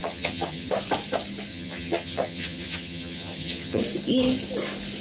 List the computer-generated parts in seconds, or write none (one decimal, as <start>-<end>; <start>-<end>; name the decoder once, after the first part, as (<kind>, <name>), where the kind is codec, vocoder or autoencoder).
0.0-0.7 (vocoder, HiFi-GAN); 1.5-3.8